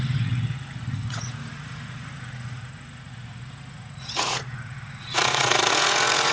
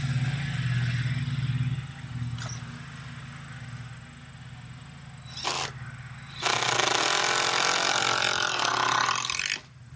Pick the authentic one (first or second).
second